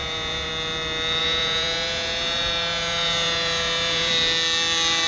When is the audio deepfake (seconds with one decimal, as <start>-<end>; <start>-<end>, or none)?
0.0-0.5; 1.2-4.1